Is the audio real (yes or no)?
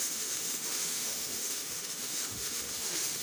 no